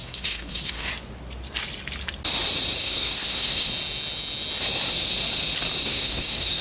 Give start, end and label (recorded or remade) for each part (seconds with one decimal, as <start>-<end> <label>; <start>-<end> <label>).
0.0-0.9 remade; 0.9-2.8 recorded; 2.8-3.7 remade; 3.7-5.8 recorded; 5.8-6.6 remade